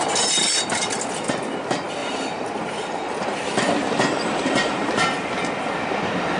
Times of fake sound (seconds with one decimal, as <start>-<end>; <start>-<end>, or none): none

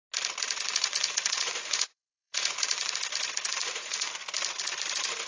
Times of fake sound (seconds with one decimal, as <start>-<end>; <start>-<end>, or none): 0.7-2.9; 3.6-4.2

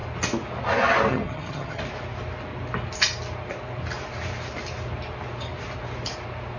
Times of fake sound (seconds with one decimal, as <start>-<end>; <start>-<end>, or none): 1.1-1.8

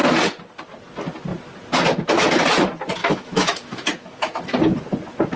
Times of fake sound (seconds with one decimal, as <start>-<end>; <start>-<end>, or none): 3.0-4.4

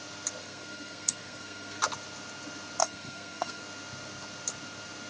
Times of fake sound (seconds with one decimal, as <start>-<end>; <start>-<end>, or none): 0.4-1.8; 2.8-3.6

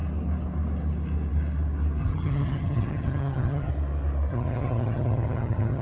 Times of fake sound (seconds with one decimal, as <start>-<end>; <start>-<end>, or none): 2.0-3.7; 4.3-5.8

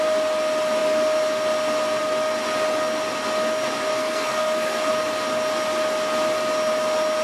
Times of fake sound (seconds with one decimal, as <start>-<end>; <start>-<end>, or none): 3.9-4.9